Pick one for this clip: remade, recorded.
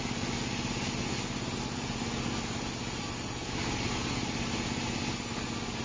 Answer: recorded